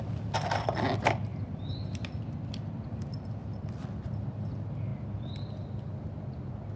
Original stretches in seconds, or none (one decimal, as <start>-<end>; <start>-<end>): 0.0-1.3; 3.0-6.8